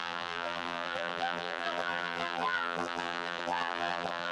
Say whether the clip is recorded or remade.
remade